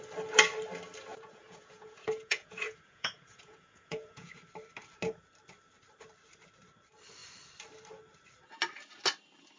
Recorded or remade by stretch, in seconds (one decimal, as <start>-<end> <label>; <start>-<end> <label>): 0.0-1.1 recorded; 1.1-4.4 remade; 4.4-9.6 recorded

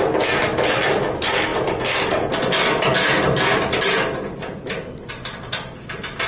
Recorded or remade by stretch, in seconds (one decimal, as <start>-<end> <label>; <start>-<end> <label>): 0.0-6.3 recorded

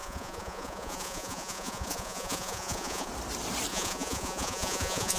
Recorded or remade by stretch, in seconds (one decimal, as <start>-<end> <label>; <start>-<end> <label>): 0.0-3.1 remade; 3.1-3.7 recorded; 3.7-5.2 remade

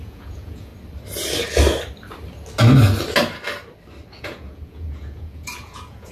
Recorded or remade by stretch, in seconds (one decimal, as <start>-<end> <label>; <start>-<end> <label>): 0.0-0.7 remade; 0.7-4.2 recorded; 4.2-6.1 remade

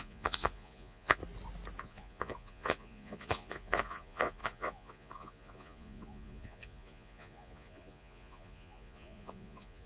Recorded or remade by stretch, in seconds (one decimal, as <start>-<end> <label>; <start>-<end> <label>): 0.0-1.2 remade; 1.2-1.8 recorded; 1.8-9.9 remade

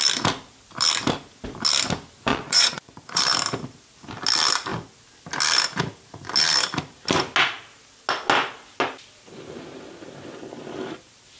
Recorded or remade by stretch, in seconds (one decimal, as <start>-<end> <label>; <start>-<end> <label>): 0.0-2.3 recorded; 2.3-3.2 remade; 3.2-11.4 recorded

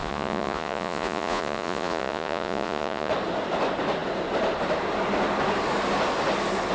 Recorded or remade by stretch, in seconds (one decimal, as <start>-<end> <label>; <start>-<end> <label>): 0.0-3.1 remade; 3.1-6.7 recorded